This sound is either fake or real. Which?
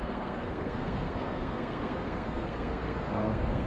fake